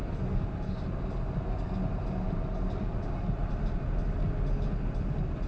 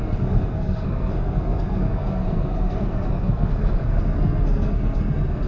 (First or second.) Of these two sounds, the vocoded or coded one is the second